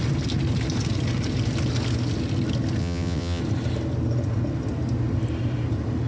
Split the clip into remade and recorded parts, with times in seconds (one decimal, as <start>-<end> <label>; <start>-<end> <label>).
0.0-2.8 recorded; 2.8-3.4 remade; 3.4-6.1 recorded